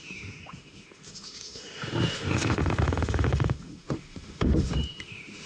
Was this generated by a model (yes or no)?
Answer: yes